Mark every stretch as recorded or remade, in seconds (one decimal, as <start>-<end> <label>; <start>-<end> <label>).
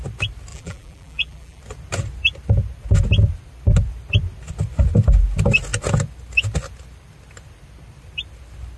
0.0-0.5 recorded; 0.5-1.6 remade; 1.6-8.8 recorded